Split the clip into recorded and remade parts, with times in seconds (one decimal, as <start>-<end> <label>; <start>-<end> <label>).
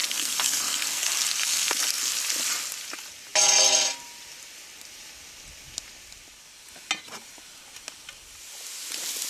0.0-2.1 remade; 2.1-9.3 recorded